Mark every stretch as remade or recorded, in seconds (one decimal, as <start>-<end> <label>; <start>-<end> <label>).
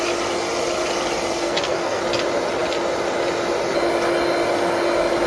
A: 0.0-1.4 recorded; 1.4-2.0 remade; 2.0-5.3 recorded